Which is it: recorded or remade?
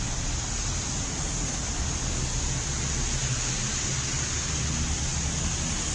recorded